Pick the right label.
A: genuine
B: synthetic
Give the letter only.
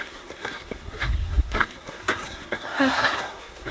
B